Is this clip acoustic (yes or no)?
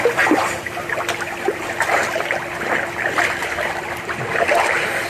no